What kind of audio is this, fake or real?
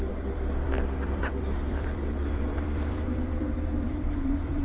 fake